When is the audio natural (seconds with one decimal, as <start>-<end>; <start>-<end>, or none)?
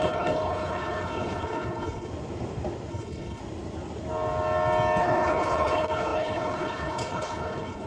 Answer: 2.1-2.9; 3.4-5.0